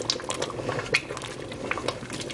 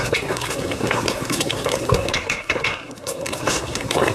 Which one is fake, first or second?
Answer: second